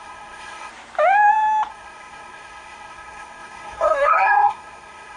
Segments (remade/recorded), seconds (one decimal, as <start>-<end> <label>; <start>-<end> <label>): 0.0-0.7 remade; 0.7-1.7 recorded; 1.7-5.2 remade